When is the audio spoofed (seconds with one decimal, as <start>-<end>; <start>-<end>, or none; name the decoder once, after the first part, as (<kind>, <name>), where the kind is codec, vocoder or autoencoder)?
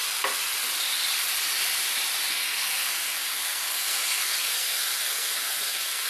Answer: 2.3-6.1 (codec, SNAC)